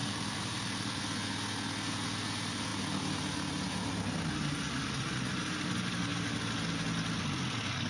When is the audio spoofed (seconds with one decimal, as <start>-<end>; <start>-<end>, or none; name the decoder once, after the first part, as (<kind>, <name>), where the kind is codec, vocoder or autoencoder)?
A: 0.0-1.0 (vocoder, BigVGAN v2)